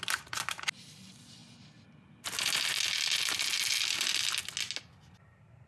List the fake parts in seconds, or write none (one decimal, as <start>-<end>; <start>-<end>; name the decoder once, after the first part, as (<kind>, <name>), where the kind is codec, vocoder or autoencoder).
none

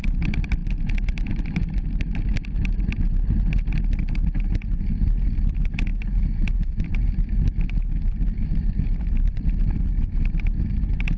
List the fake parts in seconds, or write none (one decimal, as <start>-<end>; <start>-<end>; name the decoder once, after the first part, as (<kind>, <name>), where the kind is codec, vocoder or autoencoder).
0.0-0.6 (vocoder, BigVGAN v2); 4.8-11.2

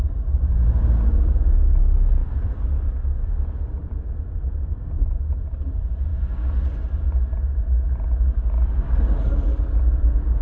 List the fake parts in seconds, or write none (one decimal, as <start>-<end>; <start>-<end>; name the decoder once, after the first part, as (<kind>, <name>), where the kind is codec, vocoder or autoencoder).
2.2-3.3 (vocoder, BigVGAN v2)

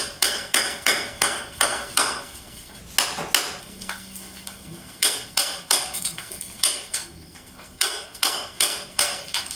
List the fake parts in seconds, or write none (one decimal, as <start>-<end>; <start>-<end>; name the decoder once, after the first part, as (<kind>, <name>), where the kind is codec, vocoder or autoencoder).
0.0-2.8 (codec, SNAC); 3.6-9.5

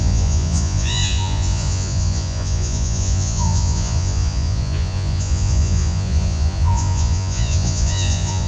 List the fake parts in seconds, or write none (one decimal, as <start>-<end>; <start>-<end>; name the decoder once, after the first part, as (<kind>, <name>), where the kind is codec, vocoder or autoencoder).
0.0-8.5 (vocoder, Vocos)

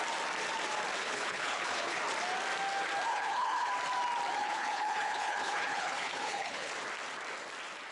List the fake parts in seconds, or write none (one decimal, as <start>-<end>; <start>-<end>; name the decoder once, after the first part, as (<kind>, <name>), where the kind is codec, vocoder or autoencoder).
1.0-2.0 (codec, HILCodec); 3.1-3.7; 4.4-6.7

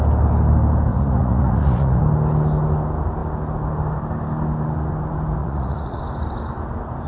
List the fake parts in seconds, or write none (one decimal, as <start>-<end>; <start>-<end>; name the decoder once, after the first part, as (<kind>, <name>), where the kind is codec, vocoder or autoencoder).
0.9-2.0 (vocoder, Vocos); 5.4-6.0